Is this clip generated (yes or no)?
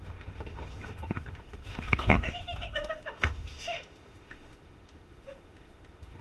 yes